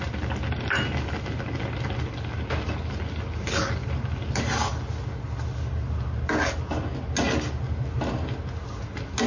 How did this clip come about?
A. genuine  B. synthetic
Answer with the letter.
A